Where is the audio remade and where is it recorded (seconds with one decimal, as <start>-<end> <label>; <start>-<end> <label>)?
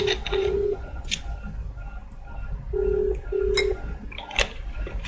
0.0-0.4 recorded; 0.4-1.2 remade; 1.2-5.1 recorded